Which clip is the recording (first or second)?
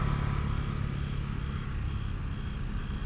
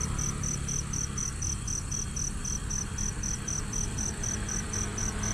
first